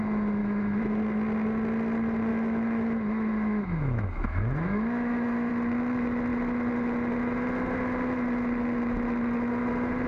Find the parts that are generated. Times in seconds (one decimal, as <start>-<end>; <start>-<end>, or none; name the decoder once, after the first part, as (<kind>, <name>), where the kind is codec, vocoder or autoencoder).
0.4-1.0 (autoencoder, DAC-VAE); 2.3-5.5